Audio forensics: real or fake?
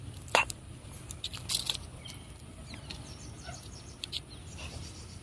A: real